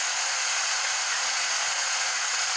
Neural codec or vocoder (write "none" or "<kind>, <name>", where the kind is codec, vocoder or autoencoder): vocoder, Vocos